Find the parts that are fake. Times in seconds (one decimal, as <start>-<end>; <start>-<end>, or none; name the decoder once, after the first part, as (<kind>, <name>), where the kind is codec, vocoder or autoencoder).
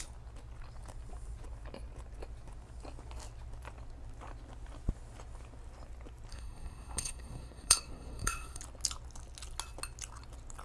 6.3-8.6 (codec, SNAC)